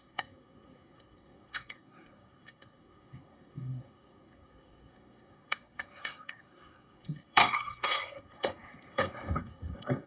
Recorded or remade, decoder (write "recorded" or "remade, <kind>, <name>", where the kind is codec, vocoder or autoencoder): remade, codec, SNAC